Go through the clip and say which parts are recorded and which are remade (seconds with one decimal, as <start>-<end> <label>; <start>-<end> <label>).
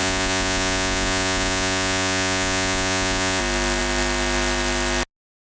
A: 0.0-3.4 remade; 3.4-5.6 recorded